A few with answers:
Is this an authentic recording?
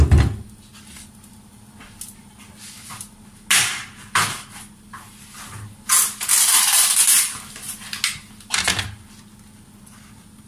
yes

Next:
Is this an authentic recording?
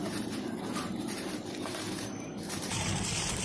no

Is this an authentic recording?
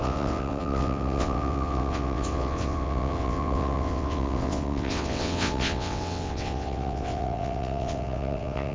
no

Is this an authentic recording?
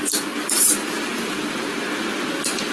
yes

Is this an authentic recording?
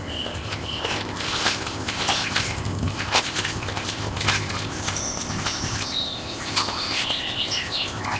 no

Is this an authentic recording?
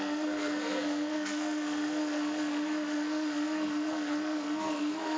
no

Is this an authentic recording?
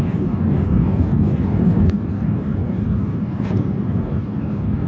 no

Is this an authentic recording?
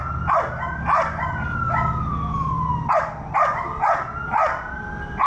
yes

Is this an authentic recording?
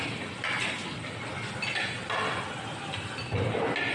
yes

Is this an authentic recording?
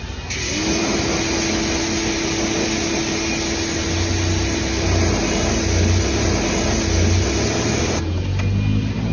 yes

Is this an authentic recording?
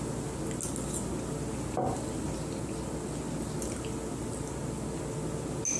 yes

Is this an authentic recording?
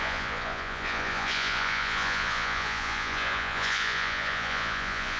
no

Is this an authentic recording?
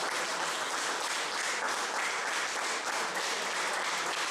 yes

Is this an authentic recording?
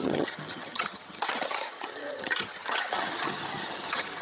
no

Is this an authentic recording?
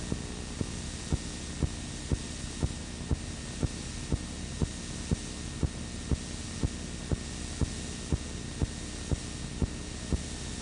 yes